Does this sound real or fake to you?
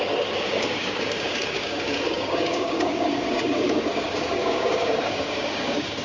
fake